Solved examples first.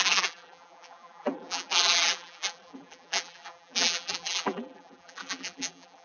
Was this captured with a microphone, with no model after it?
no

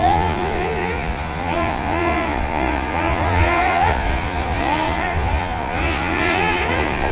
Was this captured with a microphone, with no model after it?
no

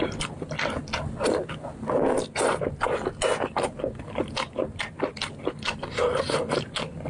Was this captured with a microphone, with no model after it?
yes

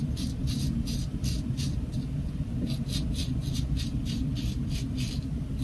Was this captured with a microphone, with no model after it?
yes